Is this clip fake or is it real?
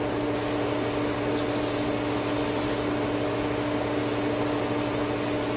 real